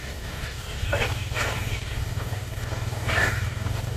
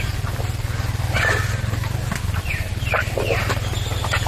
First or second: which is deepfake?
first